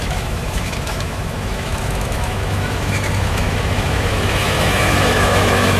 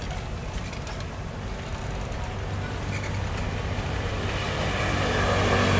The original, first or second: second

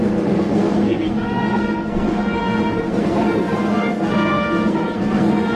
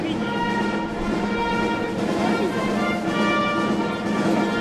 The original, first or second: second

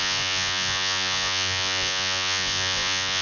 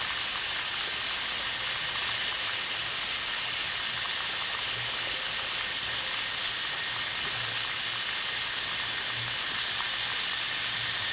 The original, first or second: second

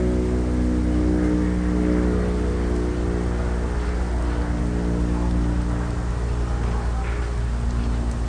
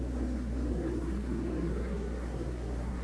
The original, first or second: first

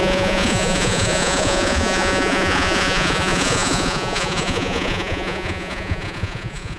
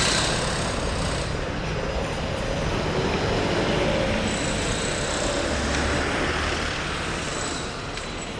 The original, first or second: second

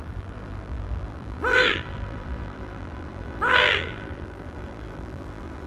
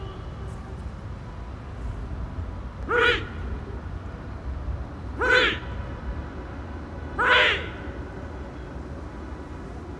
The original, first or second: second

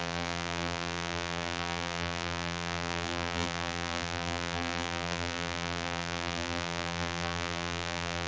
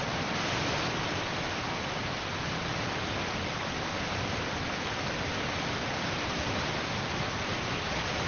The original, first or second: second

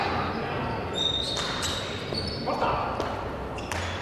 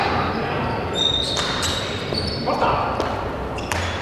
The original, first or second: first